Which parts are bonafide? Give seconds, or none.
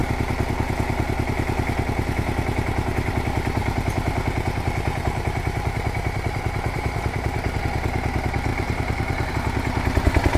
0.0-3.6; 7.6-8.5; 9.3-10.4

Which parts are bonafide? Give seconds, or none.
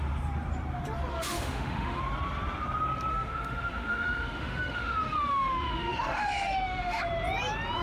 0.0-1.1; 2.0-3.1; 7.0-7.8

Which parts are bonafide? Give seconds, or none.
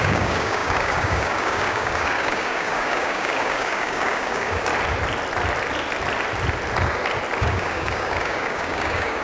4.7-7.4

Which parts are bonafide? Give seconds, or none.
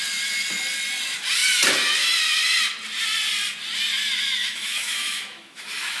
0.0-4.4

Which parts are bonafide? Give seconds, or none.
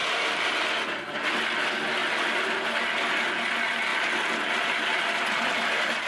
0.5-6.1